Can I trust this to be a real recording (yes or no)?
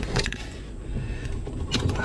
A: no